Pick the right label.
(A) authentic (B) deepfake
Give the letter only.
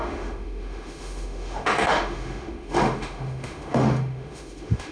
B